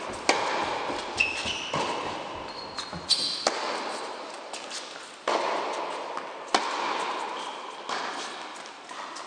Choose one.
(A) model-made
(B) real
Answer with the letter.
B